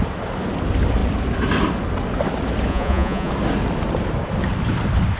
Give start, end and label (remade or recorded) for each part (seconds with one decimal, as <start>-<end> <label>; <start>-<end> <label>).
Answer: 0.0-2.7 recorded; 2.7-3.3 remade; 3.3-5.2 recorded